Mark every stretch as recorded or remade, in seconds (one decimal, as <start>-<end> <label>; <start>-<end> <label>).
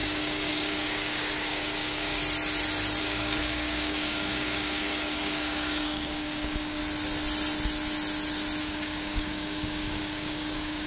0.0-2.2 remade; 2.2-3.0 recorded; 3.0-6.8 remade; 6.8-8.6 recorded; 8.6-10.9 remade